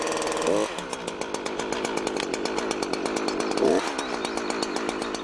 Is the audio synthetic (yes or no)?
no